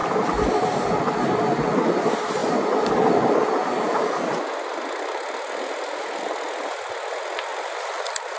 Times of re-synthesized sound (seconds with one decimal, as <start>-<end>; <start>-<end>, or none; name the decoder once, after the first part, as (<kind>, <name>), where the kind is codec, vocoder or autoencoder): 7.5-8.4 (vocoder, BigVGAN v2)